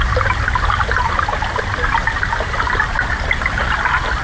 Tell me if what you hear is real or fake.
real